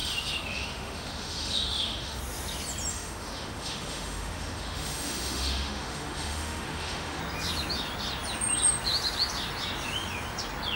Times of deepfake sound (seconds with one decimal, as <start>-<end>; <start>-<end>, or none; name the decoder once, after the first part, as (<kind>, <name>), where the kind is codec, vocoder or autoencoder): 0.0-2.2 (autoencoder, DAC-VAE); 2.9-7.2